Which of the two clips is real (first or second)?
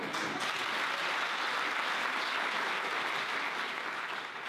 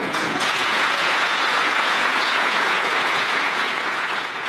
first